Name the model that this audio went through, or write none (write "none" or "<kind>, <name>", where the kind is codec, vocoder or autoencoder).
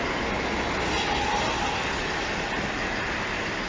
none